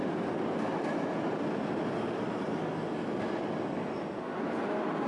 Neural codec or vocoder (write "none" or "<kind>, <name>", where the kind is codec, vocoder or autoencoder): none